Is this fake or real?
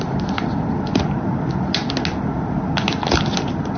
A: real